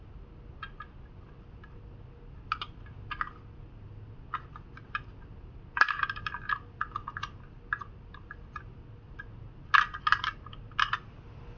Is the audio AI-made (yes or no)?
no